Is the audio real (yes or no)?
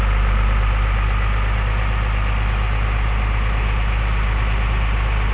yes